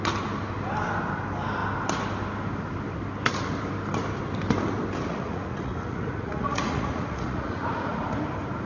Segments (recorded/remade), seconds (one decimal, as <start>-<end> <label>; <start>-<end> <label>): 0.0-5.1 recorded; 5.1-8.1 remade; 8.1-8.7 recorded